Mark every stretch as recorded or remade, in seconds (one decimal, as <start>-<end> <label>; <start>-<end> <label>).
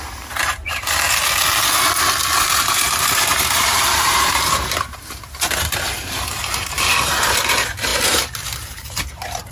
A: 0.0-1.2 remade; 1.2-2.4 recorded; 2.4-9.5 remade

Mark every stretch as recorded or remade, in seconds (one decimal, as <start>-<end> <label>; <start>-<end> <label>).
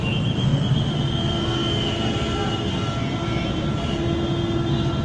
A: 0.0-5.0 recorded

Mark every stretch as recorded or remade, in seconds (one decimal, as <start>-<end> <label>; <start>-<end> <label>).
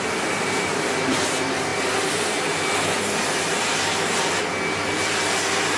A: 0.0-5.8 recorded